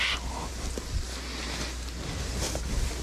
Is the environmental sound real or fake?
real